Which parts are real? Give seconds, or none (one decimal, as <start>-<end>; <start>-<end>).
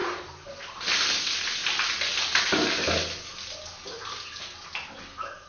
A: 0.7-5.5